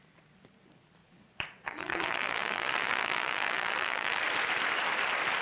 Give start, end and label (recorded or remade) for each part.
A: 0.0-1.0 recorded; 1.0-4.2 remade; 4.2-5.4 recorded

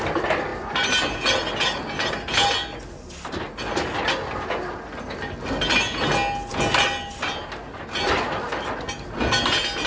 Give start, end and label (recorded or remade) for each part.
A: 0.0-9.9 recorded

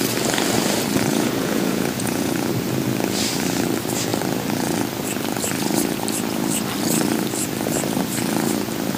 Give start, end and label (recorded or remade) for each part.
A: 0.0-1.1 recorded; 1.1-2.5 remade; 2.5-9.0 recorded

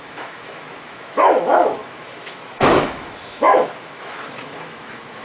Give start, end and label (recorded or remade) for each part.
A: 0.0-5.2 remade

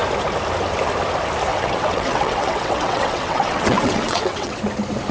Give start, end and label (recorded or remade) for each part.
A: 0.0-1.5 recorded; 1.5-4.6 remade; 4.6-5.1 recorded

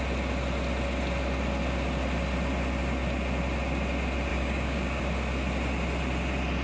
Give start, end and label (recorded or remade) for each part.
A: 0.0-4.3 recorded; 4.3-5.0 remade; 5.0-6.6 recorded